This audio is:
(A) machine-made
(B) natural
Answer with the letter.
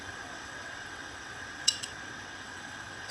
A